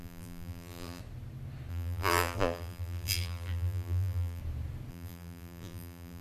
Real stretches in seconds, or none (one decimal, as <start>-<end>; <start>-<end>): 1.0-1.7; 4.4-4.9